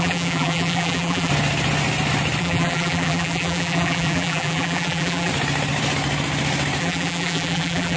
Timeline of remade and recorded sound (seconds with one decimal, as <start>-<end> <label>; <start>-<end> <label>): 0.0-1.3 remade; 1.3-2.4 recorded; 2.4-5.3 remade; 5.3-6.8 recorded; 6.8-8.0 remade